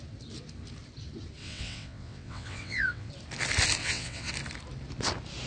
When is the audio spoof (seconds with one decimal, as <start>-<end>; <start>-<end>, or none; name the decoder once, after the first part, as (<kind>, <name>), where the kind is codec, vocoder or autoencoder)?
1.4-3.1 (vocoder, WaveNeXt); 3.8-4.3